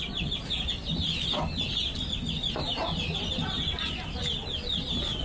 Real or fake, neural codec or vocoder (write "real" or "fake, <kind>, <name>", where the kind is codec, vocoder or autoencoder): real